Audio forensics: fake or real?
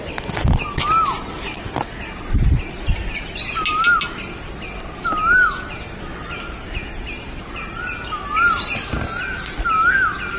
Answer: real